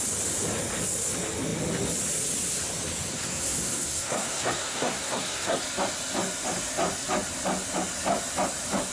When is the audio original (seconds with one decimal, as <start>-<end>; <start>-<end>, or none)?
0.0-3.1; 5.6-8.9